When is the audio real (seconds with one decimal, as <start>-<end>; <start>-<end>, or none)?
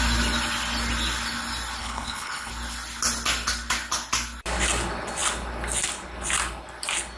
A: 0.0-1.8; 2.5-7.2